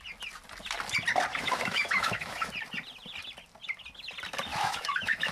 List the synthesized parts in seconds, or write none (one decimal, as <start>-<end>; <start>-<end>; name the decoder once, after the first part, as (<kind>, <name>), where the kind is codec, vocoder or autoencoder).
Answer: 1.3-2.5 (autoencoder, DAC-VAE); 4.5-5.3